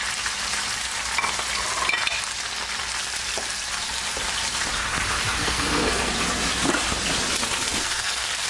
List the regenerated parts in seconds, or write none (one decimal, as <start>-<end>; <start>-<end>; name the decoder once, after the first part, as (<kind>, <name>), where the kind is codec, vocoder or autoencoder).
5.4-6.1 (codec, SNAC); 7.7-8.5